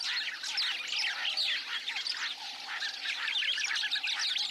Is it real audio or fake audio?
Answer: real